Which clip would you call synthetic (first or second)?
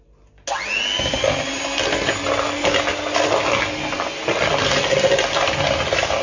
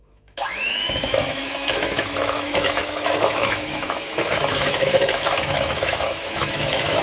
second